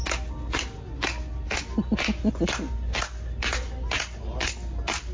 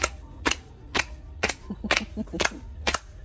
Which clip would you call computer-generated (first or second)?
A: second